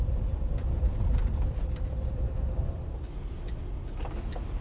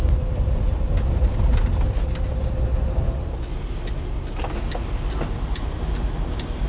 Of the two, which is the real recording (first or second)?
second